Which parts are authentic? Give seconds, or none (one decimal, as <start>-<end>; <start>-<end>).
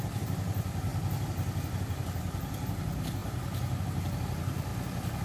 0.9-1.9; 4.7-5.2